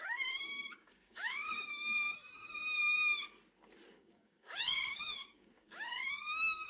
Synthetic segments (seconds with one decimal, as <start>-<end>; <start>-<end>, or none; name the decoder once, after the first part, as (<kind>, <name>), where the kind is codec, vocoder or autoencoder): 0.0-2.8 (codec, DAC); 4.0-6.7